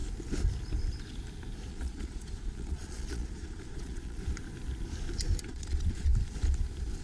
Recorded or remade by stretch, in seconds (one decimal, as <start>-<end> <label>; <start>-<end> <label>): 0.0-1.7 recorded; 1.7-4.2 remade; 4.2-5.4 recorded; 5.4-6.1 remade; 6.1-7.0 recorded